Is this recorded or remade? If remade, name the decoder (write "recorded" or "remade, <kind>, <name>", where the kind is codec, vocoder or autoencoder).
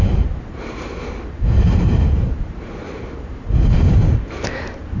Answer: remade, vocoder, BigVGAN v2